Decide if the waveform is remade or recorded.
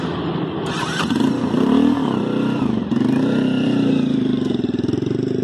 remade